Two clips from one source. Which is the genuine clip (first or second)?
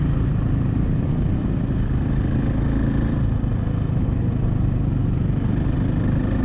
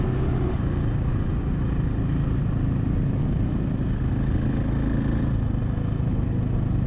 second